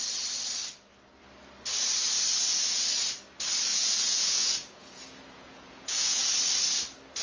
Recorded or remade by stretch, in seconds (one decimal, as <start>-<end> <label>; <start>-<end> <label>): 0.0-3.7 recorded; 3.7-6.2 remade; 6.2-7.2 recorded